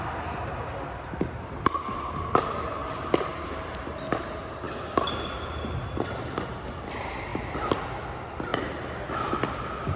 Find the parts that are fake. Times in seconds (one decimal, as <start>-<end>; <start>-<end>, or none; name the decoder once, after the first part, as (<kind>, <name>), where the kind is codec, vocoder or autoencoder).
none